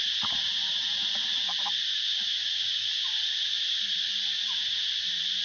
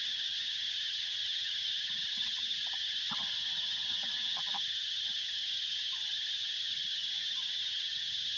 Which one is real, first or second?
first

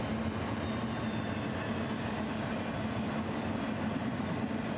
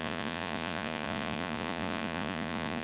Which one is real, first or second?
first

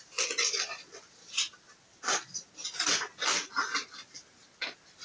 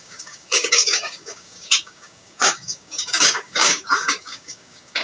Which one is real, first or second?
first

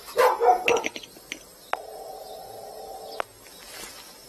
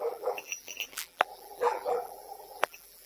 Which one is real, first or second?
first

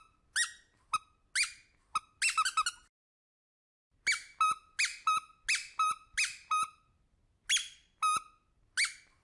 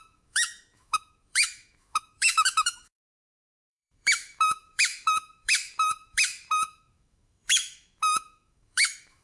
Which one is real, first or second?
first